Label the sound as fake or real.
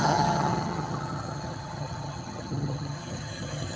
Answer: fake